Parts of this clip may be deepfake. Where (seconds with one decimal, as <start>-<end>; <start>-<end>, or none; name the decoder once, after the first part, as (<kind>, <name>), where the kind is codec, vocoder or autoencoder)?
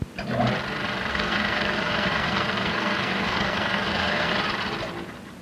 1.1-4.3 (codec, SNAC)